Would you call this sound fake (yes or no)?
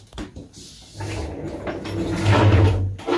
no